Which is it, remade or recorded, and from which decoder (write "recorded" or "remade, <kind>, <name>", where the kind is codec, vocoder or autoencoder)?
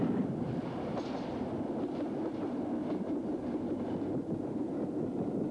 recorded